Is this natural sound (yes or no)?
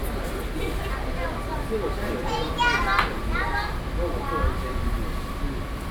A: yes